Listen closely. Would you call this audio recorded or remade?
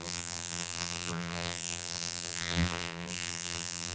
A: remade